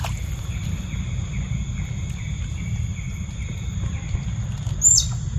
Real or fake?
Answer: real